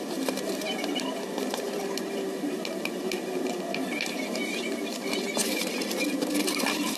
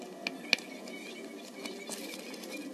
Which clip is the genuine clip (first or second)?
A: second